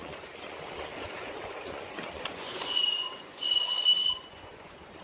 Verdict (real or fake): fake